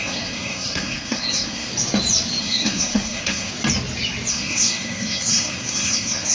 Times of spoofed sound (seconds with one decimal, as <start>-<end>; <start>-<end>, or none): 0.0-1.7; 2.4-3.5; 4.3-6.3